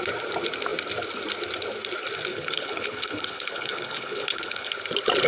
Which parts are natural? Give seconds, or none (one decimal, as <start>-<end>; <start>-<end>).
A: 0.0-2.3; 4.7-5.3